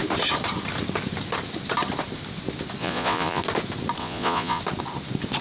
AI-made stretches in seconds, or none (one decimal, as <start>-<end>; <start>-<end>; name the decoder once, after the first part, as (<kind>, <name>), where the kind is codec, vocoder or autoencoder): 2.8-3.4 (vocoder, Vocos); 4.0-4.6